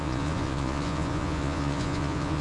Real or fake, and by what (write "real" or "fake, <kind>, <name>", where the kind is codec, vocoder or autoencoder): fake, vocoder, Vocos